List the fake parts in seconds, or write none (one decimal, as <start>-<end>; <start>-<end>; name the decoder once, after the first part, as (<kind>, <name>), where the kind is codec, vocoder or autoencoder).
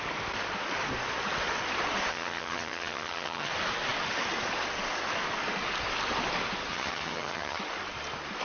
2.1-3.5 (vocoder, HiFi-GAN); 6.7-7.6